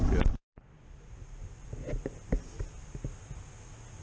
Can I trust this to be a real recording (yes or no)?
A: yes